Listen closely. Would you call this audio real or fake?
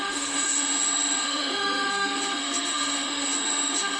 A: fake